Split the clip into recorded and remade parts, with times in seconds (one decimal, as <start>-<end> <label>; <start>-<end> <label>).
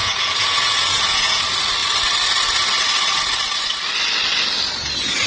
0.0-1.4 remade; 1.4-5.3 recorded